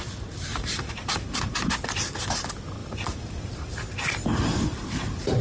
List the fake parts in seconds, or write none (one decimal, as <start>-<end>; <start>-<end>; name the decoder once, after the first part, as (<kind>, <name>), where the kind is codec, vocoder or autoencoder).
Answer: 0.5-2.2 (vocoder, BigVGAN v2); 2.8-5.4